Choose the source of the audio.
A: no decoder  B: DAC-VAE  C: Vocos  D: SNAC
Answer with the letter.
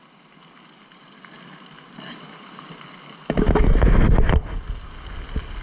A